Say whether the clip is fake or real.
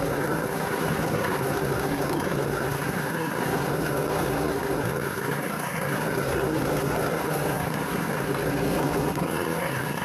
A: fake